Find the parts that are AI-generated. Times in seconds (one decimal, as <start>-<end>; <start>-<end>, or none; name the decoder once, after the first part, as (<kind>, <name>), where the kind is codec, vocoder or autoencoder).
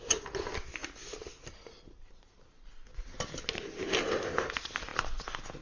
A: none